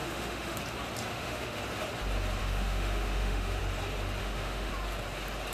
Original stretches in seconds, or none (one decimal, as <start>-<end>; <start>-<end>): 0.6-1.1; 1.6-2.4; 3.6-4.2; 4.7-5.5